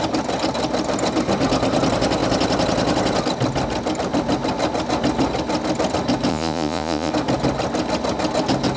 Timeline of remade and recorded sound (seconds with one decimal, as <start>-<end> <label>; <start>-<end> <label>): 0.0-6.3 recorded; 6.3-7.1 remade; 7.1-8.8 recorded